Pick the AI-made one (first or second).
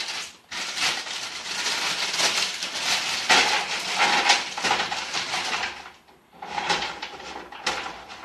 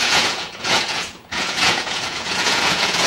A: second